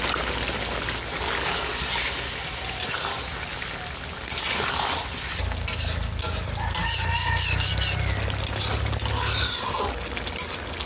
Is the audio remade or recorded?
recorded